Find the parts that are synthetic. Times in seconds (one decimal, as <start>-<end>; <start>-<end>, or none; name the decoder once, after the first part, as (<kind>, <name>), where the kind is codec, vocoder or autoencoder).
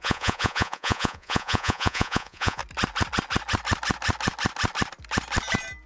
0.0-2.6 (vocoder, Vocos)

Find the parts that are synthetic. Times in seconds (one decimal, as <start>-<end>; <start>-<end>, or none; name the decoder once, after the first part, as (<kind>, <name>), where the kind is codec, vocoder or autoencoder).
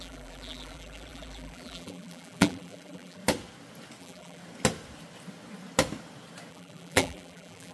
0.0-3.2 (vocoder, BigVGAN v2); 4.0-4.4; 6.5-7.7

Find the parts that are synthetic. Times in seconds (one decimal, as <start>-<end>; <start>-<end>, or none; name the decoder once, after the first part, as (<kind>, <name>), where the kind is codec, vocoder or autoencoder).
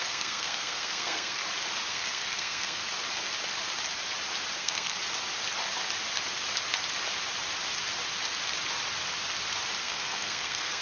0.0-1.4 (codec, SNAC); 1.9-2.8; 4.6-5.0; 9.8-10.8